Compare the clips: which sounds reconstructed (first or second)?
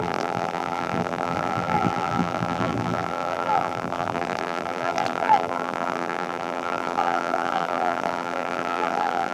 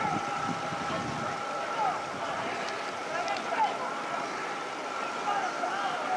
first